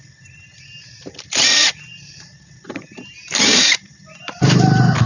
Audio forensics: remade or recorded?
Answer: remade